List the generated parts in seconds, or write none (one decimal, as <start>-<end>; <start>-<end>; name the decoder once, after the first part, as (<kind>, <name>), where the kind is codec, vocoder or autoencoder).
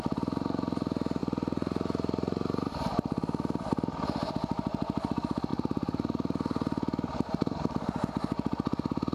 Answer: none